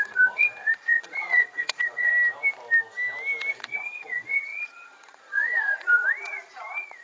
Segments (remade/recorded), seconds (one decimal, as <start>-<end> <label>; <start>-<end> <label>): 0.0-2.1 remade; 2.1-3.5 recorded; 3.5-7.0 remade